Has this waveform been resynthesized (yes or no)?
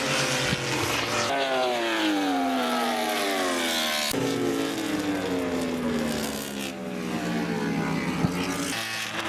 no